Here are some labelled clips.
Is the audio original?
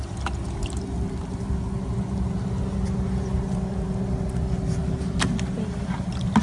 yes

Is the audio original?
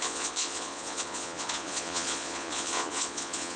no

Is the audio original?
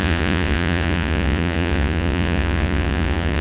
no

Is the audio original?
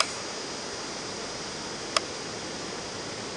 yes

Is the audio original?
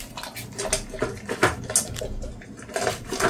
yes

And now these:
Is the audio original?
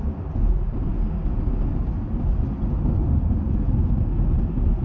yes